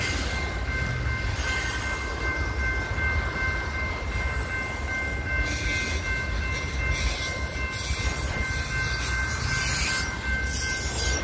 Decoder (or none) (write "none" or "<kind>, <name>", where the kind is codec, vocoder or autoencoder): none